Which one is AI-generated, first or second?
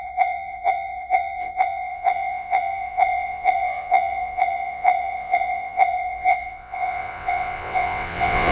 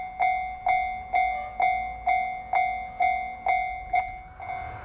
first